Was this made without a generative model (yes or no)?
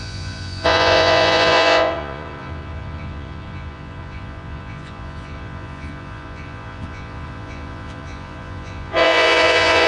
no